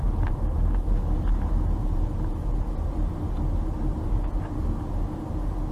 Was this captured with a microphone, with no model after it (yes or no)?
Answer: yes